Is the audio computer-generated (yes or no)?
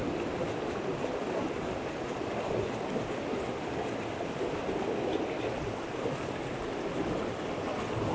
no